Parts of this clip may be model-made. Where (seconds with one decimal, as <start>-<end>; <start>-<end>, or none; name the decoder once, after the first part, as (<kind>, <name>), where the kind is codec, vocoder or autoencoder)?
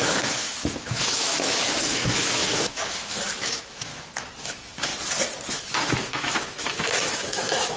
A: 0.0-3.9 (autoencoder, DAC-VAE); 4.4-4.9; 5.5-7.8